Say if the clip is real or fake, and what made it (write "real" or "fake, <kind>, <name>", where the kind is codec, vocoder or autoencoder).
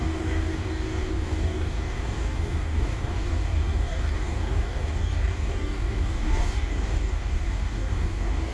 fake, codec, DAC